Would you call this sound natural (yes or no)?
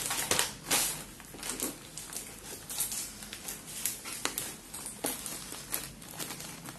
yes